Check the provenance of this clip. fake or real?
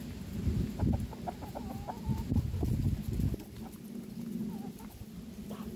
real